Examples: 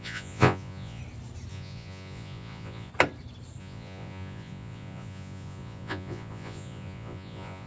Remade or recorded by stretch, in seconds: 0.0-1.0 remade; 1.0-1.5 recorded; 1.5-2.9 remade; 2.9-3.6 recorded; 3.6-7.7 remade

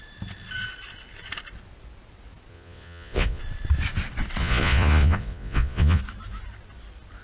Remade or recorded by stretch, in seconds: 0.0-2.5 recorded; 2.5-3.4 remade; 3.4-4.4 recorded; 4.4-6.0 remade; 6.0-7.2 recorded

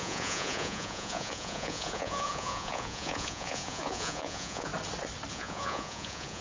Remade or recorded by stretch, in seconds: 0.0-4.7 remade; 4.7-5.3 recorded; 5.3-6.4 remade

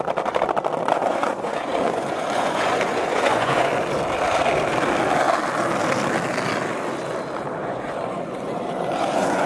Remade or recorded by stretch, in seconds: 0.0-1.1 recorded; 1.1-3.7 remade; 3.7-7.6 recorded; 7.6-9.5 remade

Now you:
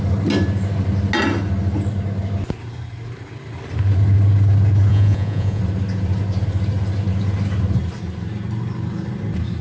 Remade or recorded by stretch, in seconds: 0.0-4.9 recorded; 4.9-5.6 remade; 5.6-9.6 recorded